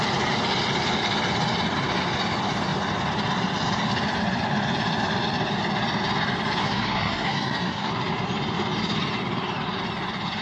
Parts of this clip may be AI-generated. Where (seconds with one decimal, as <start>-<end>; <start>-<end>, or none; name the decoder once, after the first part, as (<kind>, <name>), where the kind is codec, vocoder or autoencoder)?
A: 6.6-7.9 (codec, SNAC)